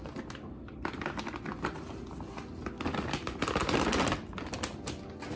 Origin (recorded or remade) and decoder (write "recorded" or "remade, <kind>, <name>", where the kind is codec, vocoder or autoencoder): recorded